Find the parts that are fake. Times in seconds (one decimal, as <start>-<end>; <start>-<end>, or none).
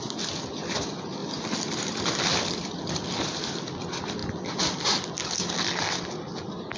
none